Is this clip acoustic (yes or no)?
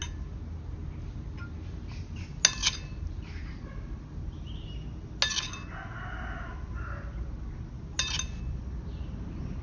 yes